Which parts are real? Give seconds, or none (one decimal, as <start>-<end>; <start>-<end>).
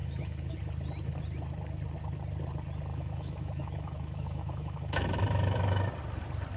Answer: 0.6-2.9; 5.9-6.6